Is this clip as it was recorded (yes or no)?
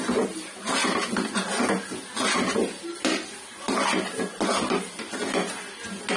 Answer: yes